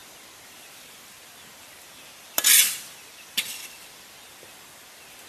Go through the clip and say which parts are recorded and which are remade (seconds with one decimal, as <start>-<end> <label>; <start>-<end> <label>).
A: 0.0-5.3 recorded

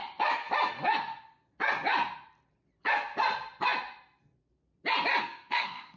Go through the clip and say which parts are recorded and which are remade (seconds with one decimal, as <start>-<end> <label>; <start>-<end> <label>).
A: 0.0-5.2 recorded; 5.2-6.0 remade

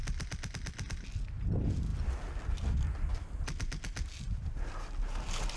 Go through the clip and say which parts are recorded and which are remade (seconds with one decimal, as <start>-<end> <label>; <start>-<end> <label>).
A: 0.0-5.6 recorded

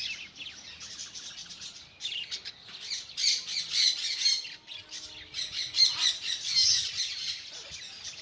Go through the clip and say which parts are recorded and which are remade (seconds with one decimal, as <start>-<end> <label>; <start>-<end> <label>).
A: 0.0-1.4 recorded; 1.4-2.0 remade; 2.0-8.2 recorded

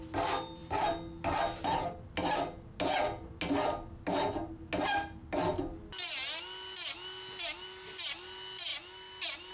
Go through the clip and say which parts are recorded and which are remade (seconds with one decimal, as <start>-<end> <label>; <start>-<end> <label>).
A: 0.0-9.5 recorded

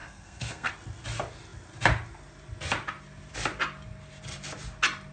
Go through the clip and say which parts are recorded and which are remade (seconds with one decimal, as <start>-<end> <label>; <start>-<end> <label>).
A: 0.0-0.7 remade; 0.7-5.1 recorded